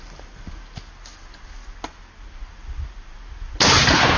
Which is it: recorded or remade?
recorded